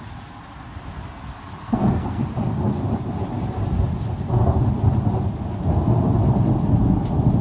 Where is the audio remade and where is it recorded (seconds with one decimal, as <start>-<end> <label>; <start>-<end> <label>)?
0.0-1.6 recorded; 1.6-2.2 remade; 2.2-7.4 recorded